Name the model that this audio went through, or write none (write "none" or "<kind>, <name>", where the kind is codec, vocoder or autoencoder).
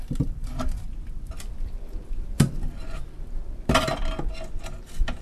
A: none